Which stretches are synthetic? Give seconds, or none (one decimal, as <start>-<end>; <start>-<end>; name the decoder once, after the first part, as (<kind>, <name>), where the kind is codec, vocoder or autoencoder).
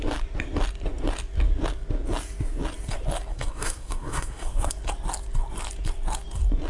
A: 3.3-4.7 (codec, SNAC)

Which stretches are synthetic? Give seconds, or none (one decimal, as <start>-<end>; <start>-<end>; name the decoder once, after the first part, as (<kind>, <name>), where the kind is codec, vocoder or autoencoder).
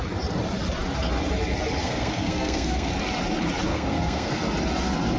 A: 1.8-2.9 (codec, SNAC); 3.7-4.3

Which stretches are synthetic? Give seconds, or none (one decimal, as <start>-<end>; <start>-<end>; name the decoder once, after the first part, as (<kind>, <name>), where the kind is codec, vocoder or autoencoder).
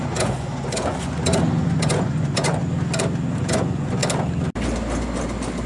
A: 0.0-2.6 (vocoder, Vocos); 3.4-4.0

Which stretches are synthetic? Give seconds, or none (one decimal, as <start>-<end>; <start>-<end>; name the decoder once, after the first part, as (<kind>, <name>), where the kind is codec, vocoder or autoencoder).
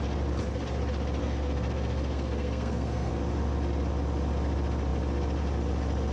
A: 1.2-3.1 (codec, SNAC)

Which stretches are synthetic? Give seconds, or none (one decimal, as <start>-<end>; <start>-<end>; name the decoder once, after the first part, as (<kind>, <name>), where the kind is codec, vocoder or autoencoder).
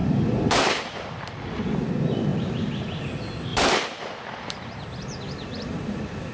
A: 0.0-1.9 (vocoder, BigVGAN v2); 3.5-6.3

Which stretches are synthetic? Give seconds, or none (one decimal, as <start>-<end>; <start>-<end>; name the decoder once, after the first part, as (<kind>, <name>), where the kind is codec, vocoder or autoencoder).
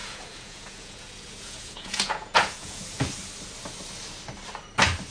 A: 0.0-3.1 (vocoder, Vocos)